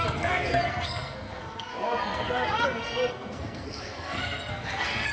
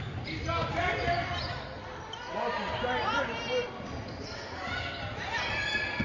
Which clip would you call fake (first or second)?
first